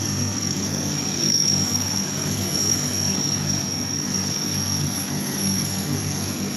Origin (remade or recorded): remade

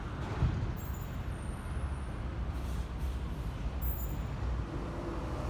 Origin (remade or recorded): recorded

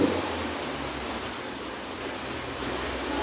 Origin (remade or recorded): recorded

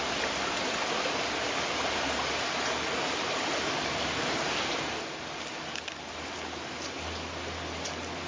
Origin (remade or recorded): recorded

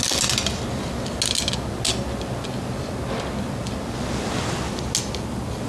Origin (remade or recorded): recorded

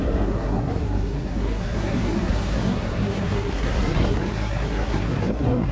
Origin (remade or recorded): remade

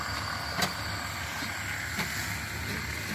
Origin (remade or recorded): recorded